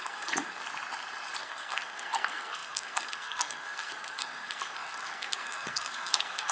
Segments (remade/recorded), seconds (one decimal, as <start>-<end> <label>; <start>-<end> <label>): 0.0-0.6 remade; 0.6-1.4 recorded; 1.4-6.5 remade